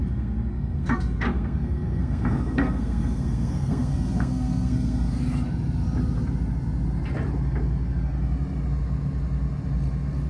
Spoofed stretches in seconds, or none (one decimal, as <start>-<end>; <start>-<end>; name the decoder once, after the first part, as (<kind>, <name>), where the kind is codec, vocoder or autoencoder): 0.0-5.2 (codec, SNAC)